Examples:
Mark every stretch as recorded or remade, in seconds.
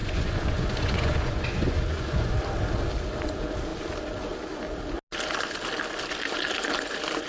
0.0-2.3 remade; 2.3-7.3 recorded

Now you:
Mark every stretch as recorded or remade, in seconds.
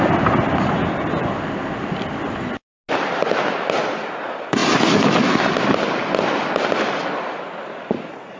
0.0-8.4 recorded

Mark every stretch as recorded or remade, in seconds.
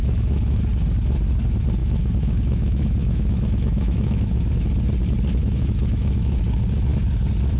0.0-0.6 remade; 0.6-1.8 recorded; 1.8-4.5 remade; 4.5-5.4 recorded; 5.4-6.4 remade; 6.4-7.6 recorded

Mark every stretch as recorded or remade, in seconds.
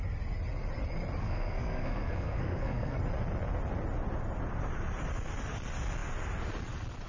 0.0-1.2 recorded; 1.2-3.0 remade; 3.0-7.1 recorded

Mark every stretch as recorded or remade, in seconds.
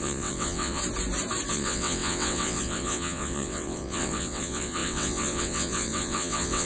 0.0-0.8 remade; 0.8-1.5 recorded; 1.5-6.7 remade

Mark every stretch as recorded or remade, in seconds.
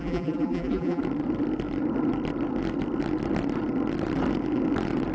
0.0-1.0 remade; 1.0-5.1 recorded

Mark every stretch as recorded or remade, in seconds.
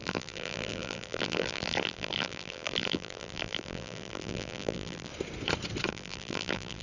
0.0-5.1 remade; 5.1-5.9 recorded; 5.9-6.8 remade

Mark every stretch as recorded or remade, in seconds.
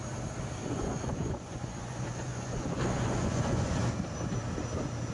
0.0-0.6 recorded; 0.6-3.7 remade; 3.7-5.1 recorded